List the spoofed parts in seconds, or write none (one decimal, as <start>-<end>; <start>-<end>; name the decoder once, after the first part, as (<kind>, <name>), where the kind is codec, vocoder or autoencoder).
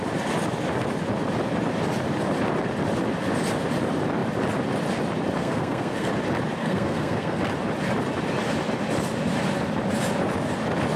5.4-6.1 (codec, SNAC); 6.6-7.4